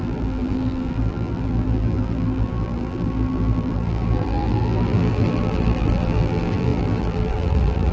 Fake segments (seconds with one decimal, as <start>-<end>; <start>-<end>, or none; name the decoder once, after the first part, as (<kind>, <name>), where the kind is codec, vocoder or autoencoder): 0.0-7.9 (vocoder, BigVGAN v2)